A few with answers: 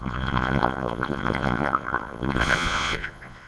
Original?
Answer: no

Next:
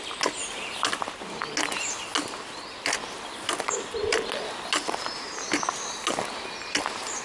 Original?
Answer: yes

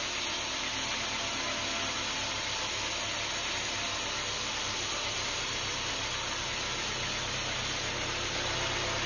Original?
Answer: yes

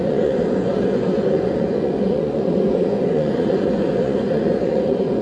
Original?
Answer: no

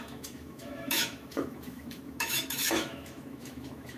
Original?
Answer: no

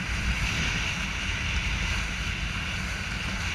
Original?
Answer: yes